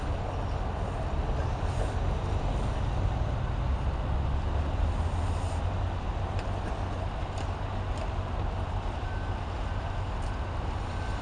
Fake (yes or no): no